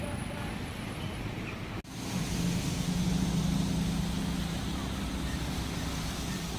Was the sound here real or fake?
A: real